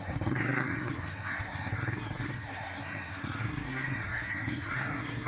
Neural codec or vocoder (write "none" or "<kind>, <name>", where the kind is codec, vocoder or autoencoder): codec, SNAC